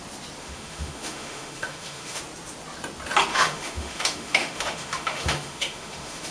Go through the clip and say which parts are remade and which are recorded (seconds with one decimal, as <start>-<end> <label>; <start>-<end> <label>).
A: 0.0-0.4 recorded; 0.4-2.2 remade; 2.2-3.3 recorded; 3.3-6.3 remade